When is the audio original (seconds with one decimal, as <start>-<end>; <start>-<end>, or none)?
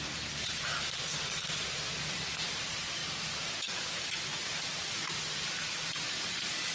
3.0-3.5